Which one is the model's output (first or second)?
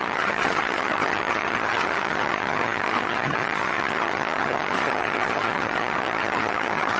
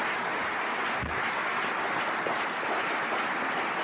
first